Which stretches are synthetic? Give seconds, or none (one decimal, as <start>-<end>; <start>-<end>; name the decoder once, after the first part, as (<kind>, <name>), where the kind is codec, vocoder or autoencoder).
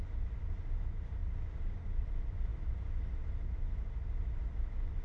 none